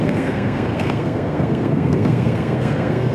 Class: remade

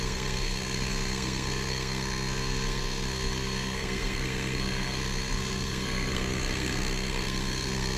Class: remade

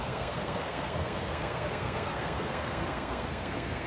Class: remade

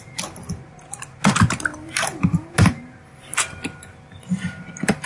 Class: recorded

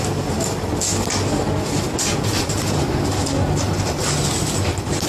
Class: recorded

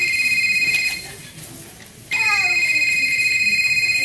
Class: recorded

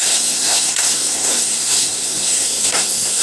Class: remade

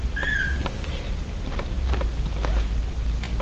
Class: recorded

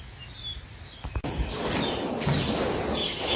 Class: recorded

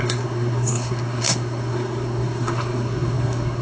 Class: remade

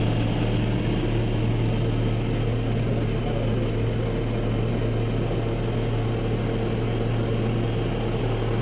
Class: recorded